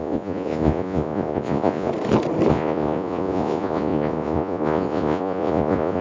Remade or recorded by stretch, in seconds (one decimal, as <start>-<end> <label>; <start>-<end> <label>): 0.0-1.9 remade; 1.9-2.5 recorded; 2.5-6.0 remade